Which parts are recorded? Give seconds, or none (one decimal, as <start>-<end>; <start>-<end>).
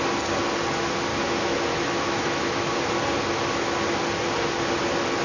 0.0-1.1; 2.7-5.2